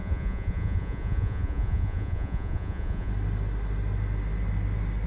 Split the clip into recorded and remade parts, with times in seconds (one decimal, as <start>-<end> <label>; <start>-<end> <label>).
0.0-3.1 remade; 3.1-5.1 recorded